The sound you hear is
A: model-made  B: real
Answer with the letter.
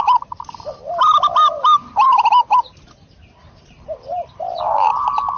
A